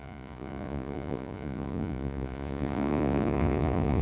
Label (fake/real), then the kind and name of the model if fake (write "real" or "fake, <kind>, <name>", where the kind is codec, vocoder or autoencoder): fake, vocoder, Vocos